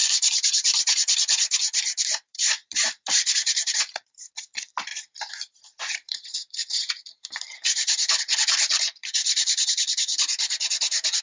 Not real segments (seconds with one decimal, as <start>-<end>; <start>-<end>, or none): 0.0-4.3; 4.9-8.2; 9.0-11.2